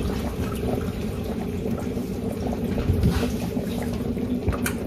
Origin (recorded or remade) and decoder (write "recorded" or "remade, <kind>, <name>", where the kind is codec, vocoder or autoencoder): remade, vocoder, BigVGAN v2